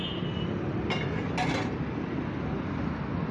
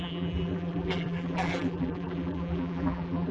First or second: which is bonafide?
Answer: first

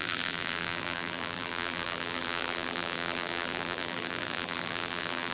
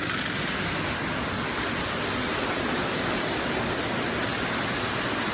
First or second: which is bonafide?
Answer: second